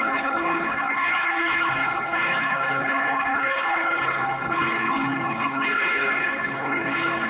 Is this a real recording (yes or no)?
no